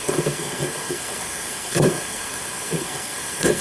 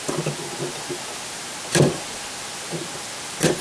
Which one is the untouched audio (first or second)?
second